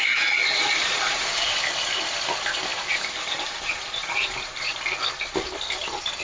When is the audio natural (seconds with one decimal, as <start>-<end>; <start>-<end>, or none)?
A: 0.0-0.8; 1.7-2.7; 4.7-6.2